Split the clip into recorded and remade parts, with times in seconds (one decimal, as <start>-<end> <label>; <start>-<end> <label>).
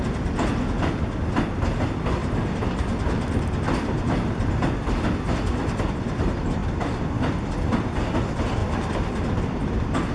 0.0-10.1 recorded